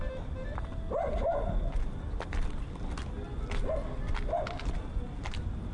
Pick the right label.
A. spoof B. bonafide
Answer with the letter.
B